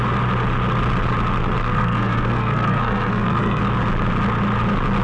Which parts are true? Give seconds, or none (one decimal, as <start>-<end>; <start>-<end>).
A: 0.0-1.6; 3.6-5.0